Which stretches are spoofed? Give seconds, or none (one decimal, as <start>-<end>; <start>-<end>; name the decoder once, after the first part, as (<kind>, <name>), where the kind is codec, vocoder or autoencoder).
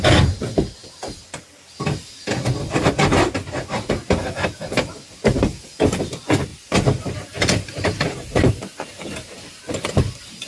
6.5-8.5 (vocoder, BigVGAN v2)